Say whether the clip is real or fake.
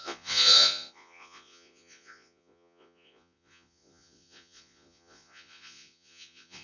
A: fake